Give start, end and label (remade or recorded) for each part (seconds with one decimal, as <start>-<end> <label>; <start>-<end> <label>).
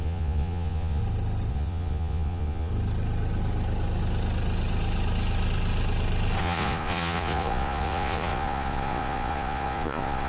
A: 0.0-1.0 remade; 1.0-1.5 recorded; 1.5-2.7 remade; 2.7-6.4 recorded; 6.4-10.3 remade